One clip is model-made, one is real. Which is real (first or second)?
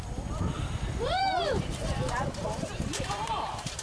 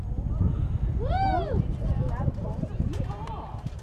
second